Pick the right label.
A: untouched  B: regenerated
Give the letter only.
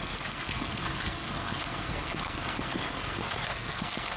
B